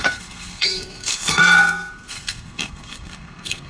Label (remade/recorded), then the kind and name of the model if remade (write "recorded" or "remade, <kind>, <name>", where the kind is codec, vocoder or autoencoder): remade, codec, SNAC